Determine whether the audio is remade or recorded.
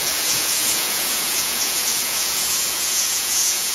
remade